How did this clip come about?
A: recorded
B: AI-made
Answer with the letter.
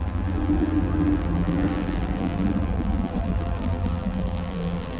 B